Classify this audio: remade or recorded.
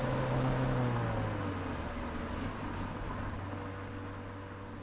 recorded